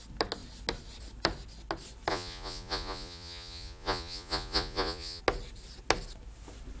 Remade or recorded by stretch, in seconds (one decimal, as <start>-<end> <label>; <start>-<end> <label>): 0.0-2.1 recorded; 2.1-5.2 remade; 5.2-6.8 recorded